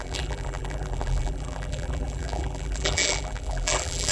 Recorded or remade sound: remade